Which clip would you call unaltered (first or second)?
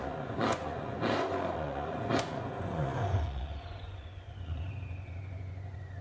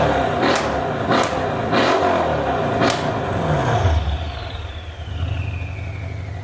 second